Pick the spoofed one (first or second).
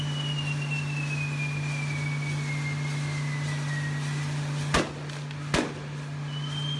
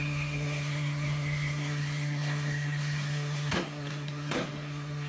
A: second